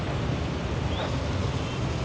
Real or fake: real